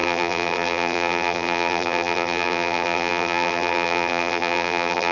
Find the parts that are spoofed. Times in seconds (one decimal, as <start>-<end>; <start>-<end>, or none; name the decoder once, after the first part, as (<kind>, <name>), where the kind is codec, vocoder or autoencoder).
0.0-5.1 (vocoder, BigVGAN v2)